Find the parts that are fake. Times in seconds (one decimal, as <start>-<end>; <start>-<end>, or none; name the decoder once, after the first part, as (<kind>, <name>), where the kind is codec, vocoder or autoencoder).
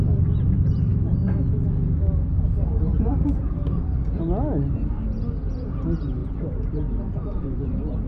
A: none